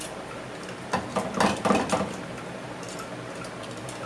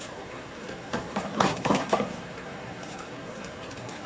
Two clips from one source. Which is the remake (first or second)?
second